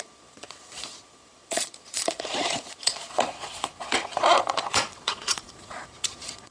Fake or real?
fake